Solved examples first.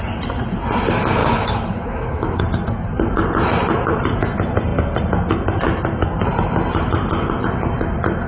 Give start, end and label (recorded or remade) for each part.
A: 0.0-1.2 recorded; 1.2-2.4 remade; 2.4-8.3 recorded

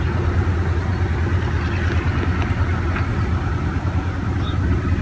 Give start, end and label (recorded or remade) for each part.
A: 0.0-5.0 recorded

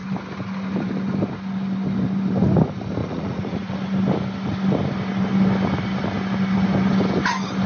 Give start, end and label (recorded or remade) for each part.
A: 0.0-3.0 recorded; 3.0-3.7 remade; 3.7-7.7 recorded

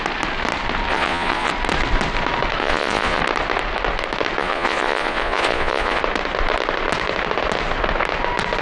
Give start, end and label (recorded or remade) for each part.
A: 0.0-0.9 recorded; 0.9-1.5 remade; 1.5-2.6 recorded; 2.6-3.2 remade; 3.2-4.4 recorded; 4.4-6.0 remade; 6.0-8.6 recorded

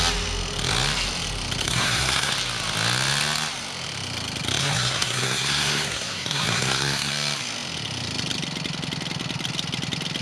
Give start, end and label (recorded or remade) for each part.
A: 0.0-1.6 recorded; 1.6-2.3 remade; 2.3-4.6 recorded; 4.6-7.1 remade; 7.1-10.2 recorded

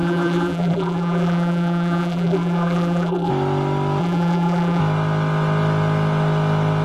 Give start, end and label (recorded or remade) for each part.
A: 0.0-3.3 remade; 3.3-4.0 recorded; 4.0-4.8 remade; 4.8-6.8 recorded

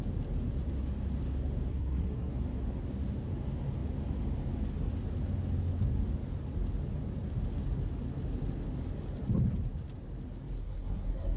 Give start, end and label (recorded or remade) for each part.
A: 0.0-1.7 recorded; 1.7-2.3 remade; 2.3-10.6 recorded; 10.6-11.4 remade

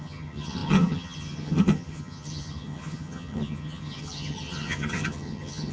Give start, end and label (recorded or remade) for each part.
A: 0.0-5.7 remade